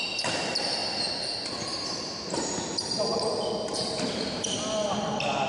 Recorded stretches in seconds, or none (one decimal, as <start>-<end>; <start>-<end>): 0.0-5.5